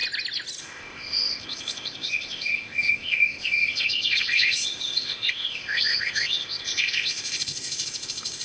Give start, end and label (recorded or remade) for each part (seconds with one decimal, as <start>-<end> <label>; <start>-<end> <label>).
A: 0.0-0.6 recorded; 0.6-8.4 remade